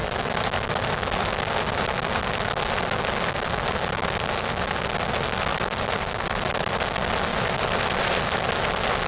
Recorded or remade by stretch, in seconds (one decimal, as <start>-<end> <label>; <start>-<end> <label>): 0.0-5.5 recorded; 5.5-6.7 remade; 6.7-7.3 recorded; 7.3-8.0 remade; 8.0-9.1 recorded